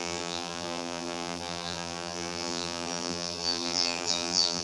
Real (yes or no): no